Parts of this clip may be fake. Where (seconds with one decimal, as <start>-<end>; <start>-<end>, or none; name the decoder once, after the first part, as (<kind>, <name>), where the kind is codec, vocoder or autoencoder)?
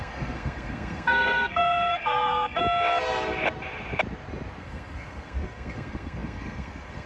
0.0-2.6 (codec, SNAC); 4.6-7.1